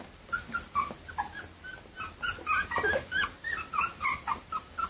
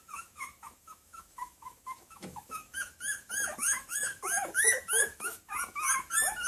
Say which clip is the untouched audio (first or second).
first